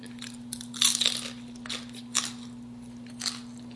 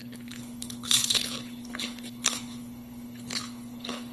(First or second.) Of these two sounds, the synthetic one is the second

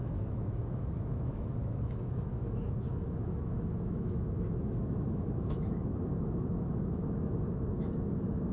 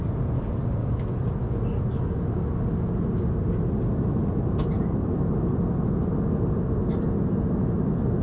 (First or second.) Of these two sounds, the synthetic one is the first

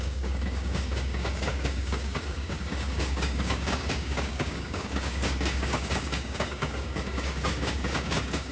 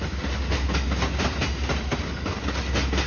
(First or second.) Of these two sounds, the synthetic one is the first